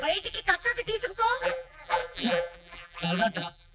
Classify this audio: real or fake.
fake